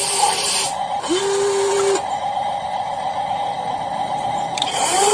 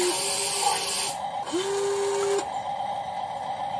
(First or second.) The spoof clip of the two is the first